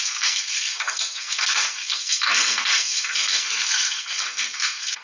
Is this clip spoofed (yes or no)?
yes